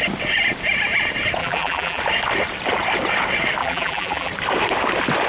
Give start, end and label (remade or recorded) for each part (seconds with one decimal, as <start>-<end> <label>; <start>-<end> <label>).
0.0-1.4 recorded; 1.4-2.0 remade; 2.0-3.6 recorded; 3.6-4.3 remade; 4.3-5.3 recorded

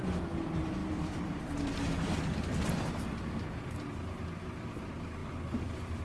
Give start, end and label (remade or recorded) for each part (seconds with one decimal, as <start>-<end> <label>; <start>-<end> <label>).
0.0-0.8 recorded; 0.8-4.4 remade; 4.4-5.2 recorded; 5.2-6.0 remade

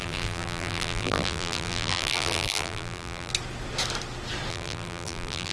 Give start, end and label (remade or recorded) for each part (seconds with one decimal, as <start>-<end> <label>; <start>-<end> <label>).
0.0-3.3 remade; 3.3-4.5 recorded; 4.5-5.5 remade

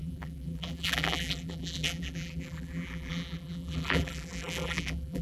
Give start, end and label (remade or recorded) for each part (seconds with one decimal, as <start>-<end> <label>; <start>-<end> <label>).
0.0-5.2 remade

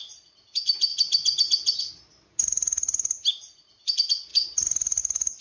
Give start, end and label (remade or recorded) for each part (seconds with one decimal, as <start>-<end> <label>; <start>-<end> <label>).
0.0-3.3 recorded; 3.3-3.9 remade; 3.9-5.4 recorded

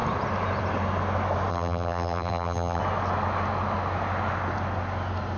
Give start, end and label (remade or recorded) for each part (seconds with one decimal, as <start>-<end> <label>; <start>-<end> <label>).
0.0-1.5 recorded; 1.5-2.8 remade; 2.8-5.4 recorded

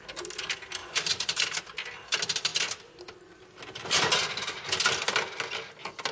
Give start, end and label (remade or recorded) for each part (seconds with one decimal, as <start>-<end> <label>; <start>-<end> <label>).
0.0-0.8 recorded; 0.8-1.6 remade; 1.6-6.1 recorded